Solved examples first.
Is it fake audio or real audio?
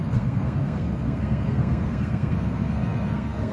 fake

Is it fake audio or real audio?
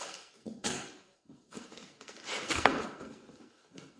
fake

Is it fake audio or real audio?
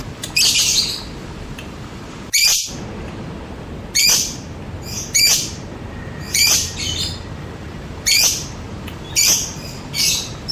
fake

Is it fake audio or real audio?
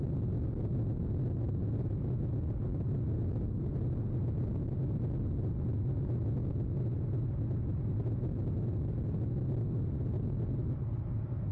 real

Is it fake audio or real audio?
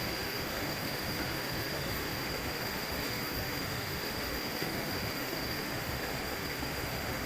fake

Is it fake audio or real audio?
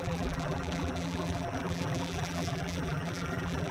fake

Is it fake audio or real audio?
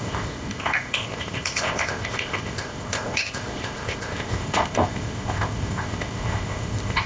fake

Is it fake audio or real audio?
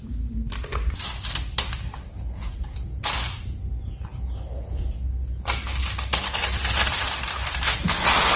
real